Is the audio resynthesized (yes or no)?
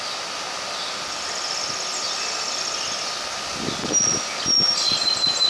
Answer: no